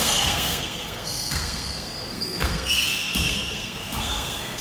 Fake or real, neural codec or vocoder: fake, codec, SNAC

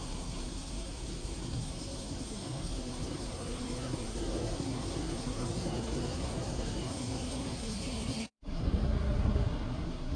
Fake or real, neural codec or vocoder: fake, codec, SNAC